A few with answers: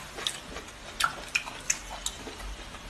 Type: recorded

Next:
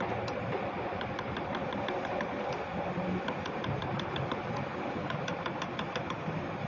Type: recorded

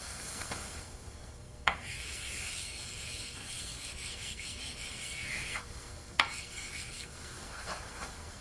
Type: remade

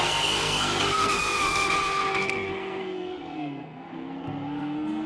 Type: remade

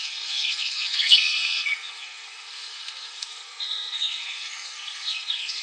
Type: remade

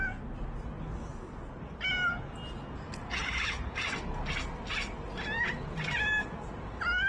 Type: recorded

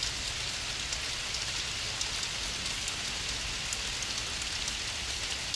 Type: recorded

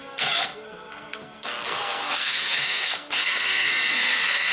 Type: remade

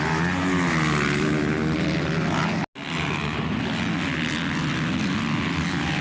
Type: recorded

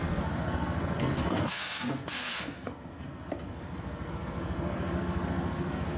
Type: remade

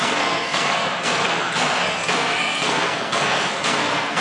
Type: remade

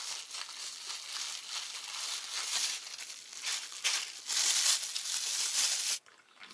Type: recorded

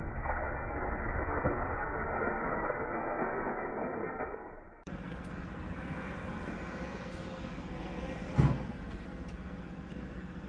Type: remade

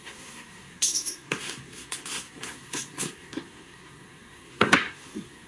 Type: remade